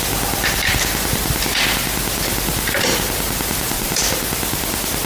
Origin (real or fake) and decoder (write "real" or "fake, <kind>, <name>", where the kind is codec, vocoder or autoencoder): real